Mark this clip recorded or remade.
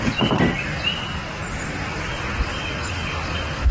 recorded